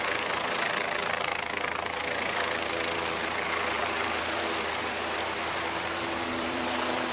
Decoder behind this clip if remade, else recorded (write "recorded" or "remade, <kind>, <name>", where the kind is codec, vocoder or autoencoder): remade, vocoder, BigVGAN v2